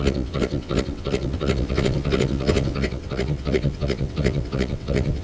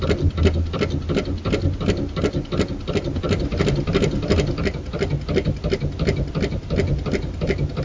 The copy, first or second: first